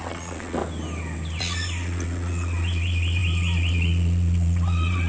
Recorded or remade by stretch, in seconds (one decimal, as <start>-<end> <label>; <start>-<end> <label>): 0.0-0.6 remade; 0.6-1.4 recorded; 1.4-5.1 remade